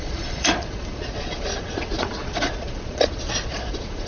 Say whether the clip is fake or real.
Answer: fake